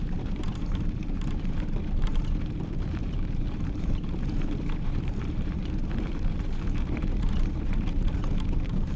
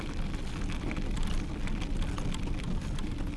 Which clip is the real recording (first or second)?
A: second